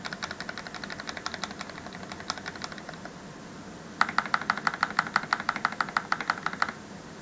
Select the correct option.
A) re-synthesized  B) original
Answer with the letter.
B